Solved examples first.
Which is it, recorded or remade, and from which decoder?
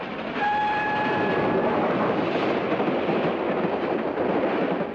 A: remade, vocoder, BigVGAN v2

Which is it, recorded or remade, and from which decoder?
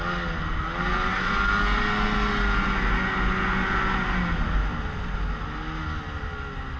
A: recorded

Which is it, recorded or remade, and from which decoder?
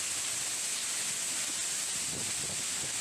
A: recorded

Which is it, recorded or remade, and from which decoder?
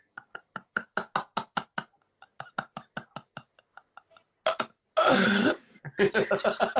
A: recorded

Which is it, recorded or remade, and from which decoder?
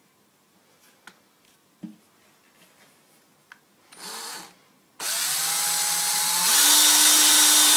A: recorded